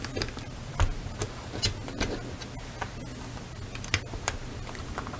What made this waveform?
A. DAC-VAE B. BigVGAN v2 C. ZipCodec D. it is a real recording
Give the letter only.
D